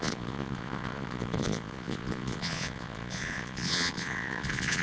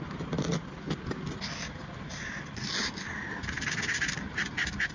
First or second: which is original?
second